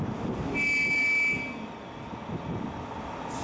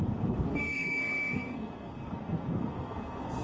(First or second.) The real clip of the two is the first